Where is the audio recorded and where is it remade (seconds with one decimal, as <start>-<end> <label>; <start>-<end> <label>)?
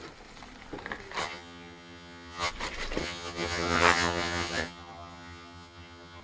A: 0.0-1.2 recorded; 1.2-2.5 remade; 2.5-3.0 recorded; 3.0-6.2 remade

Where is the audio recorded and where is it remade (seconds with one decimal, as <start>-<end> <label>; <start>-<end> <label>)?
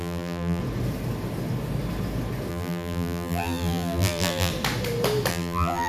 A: 0.0-0.6 remade; 0.6-2.5 recorded; 2.5-4.5 remade; 4.5-5.3 recorded; 5.3-5.9 remade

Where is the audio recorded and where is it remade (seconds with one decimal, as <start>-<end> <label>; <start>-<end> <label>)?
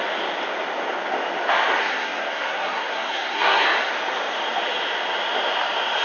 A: 0.0-1.8 recorded; 1.8-3.9 remade; 3.9-6.0 recorded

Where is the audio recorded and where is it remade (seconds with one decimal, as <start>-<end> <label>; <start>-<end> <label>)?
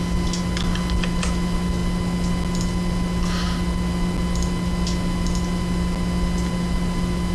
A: 0.0-7.3 recorded